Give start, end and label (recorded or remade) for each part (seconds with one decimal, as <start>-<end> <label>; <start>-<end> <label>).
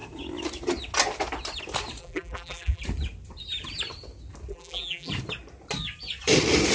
0.0-2.0 recorded; 2.0-2.8 remade; 2.8-4.5 recorded; 4.5-5.1 remade; 5.1-6.7 recorded